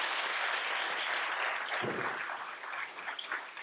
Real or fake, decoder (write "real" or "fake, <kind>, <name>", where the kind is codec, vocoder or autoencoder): real